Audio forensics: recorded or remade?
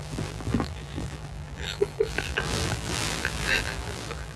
remade